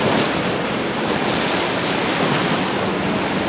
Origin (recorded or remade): recorded